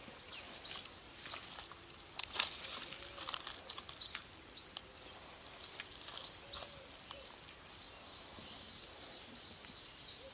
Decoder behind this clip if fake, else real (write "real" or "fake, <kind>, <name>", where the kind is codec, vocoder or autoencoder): real